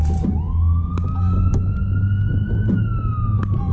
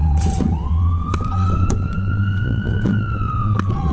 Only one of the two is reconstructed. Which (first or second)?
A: second